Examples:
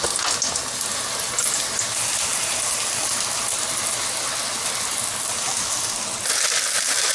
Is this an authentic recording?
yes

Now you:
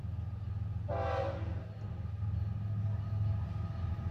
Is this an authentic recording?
yes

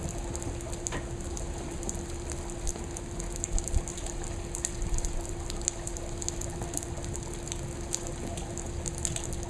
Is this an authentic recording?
yes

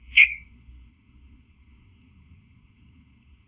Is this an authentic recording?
no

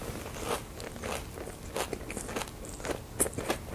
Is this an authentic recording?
yes